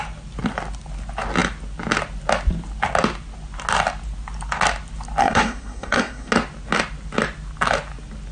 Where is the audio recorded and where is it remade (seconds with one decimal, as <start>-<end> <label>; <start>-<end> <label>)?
0.0-5.2 recorded; 5.2-6.3 remade; 6.3-8.3 recorded